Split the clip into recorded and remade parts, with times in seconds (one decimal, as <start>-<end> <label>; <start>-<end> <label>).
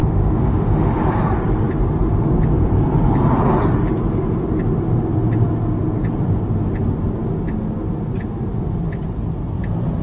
0.0-1.0 remade; 1.0-10.0 recorded